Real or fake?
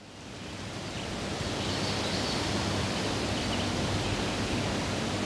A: real